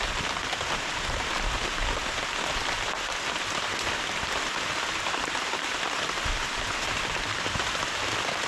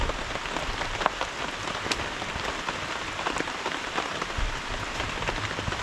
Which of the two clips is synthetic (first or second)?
first